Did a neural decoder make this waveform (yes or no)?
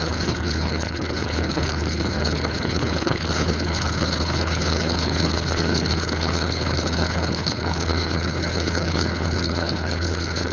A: yes